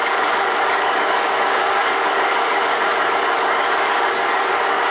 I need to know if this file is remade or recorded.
remade